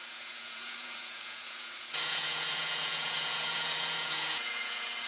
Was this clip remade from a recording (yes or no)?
yes